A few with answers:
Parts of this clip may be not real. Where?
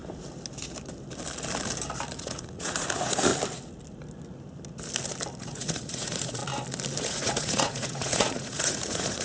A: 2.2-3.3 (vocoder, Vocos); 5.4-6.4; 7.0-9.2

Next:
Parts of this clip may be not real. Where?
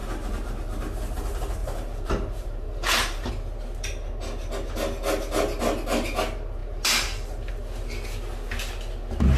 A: 1.6-3.3 (vocoder, BigVGAN v2)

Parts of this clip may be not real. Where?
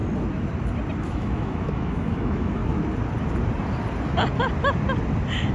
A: 1.0-2.6 (autoencoder, DAC-VAE)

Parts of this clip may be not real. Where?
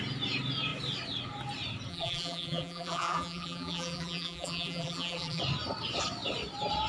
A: 1.9-5.4 (vocoder, BigVGAN v2)